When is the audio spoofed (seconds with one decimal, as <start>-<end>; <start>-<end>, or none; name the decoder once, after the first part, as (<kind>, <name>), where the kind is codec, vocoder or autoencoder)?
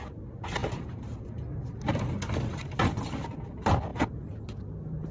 none